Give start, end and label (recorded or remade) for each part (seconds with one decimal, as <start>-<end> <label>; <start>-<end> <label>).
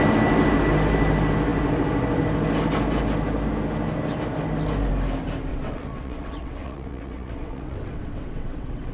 0.0-5.5 recorded; 5.5-8.9 remade